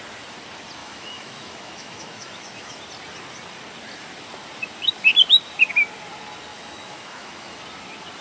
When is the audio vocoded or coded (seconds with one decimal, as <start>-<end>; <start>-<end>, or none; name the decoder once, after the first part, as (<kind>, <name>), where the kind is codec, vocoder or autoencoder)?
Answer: 0.8-2.8 (autoencoder, DAC-VAE); 6.5-7.6